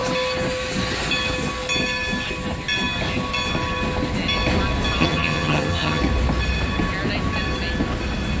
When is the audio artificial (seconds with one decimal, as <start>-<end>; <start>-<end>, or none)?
5.0-6.0

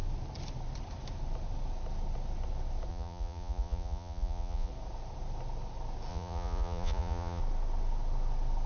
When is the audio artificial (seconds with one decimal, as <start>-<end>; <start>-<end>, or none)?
2.9-4.7; 6.1-7.4

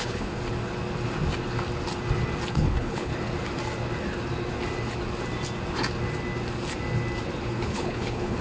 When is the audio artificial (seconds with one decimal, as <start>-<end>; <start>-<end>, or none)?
0.0-0.4; 2.5-3.1; 7.4-8.4

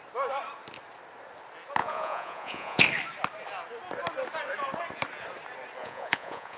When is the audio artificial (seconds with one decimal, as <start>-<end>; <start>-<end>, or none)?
1.8-2.8; 5.8-6.6

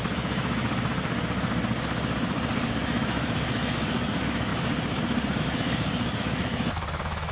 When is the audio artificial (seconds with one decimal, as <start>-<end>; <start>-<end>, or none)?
0.0-0.6; 2.9-4.5; 5.4-7.3

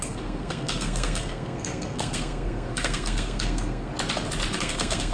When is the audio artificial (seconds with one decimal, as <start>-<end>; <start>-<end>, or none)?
0.0-3.9; 4.6-5.1